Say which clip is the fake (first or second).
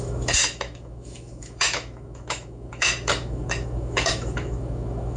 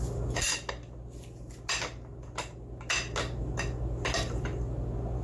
first